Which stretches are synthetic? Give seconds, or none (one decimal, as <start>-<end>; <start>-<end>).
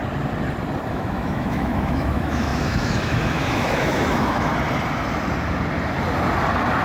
0.9-4.5